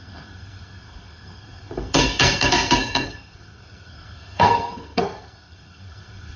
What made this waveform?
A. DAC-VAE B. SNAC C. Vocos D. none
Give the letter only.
B